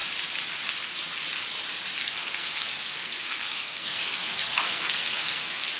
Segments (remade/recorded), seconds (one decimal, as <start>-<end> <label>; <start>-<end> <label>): 0.0-2.0 recorded; 2.0-5.8 remade